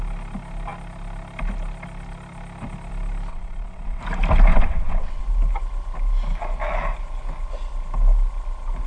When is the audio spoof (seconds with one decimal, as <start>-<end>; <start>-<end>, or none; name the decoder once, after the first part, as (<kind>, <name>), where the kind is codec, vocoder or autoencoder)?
3.3-4.0 (vocoder, WaveNeXt); 4.5-5.2